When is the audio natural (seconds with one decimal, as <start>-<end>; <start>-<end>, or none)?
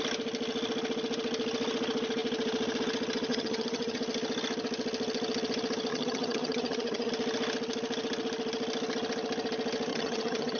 0.0-3.3; 4.0-5.9; 7.1-9.9